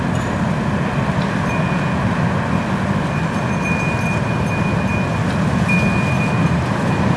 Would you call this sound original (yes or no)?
yes